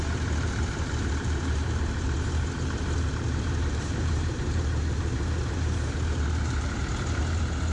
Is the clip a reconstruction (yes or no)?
yes